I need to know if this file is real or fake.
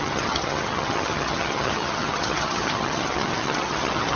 fake